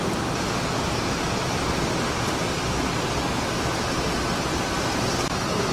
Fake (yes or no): no